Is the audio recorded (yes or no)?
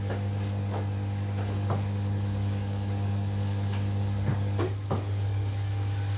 no